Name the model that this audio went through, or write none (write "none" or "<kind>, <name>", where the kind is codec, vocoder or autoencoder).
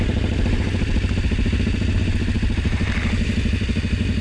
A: none